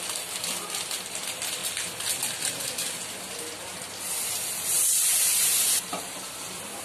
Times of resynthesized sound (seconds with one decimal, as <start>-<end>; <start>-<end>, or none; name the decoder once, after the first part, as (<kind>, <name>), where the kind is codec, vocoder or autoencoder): none

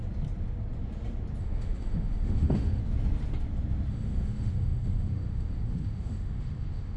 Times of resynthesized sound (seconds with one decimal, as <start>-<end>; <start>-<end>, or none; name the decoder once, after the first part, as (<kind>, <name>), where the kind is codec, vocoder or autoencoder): 1.4-2.8 (autoencoder, DAC-VAE); 3.9-7.0

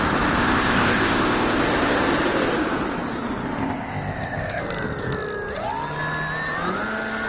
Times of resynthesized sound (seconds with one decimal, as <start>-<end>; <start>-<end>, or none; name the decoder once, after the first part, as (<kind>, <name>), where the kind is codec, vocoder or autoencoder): 0.4-1.6 (codec, ZipCodec); 3.6-4.6

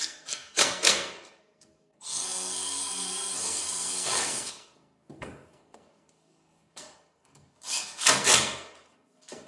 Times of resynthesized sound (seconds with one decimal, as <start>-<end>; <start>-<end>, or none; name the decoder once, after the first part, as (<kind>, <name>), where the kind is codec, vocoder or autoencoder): 0.0-9.5 (codec, SNAC)

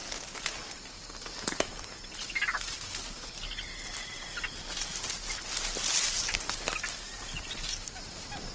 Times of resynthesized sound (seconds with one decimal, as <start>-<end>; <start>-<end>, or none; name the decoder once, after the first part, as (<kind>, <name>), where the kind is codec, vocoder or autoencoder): none

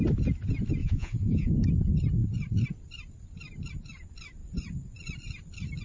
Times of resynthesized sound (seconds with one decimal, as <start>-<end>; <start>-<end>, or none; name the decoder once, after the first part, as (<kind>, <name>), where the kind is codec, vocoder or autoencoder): 0.8-1.5 (vocoder, Vocos)

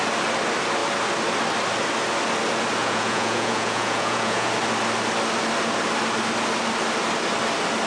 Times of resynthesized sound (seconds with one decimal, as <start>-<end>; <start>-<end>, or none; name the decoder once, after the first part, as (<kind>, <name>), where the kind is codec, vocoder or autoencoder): 2.8-4.5 (vocoder, Vocos)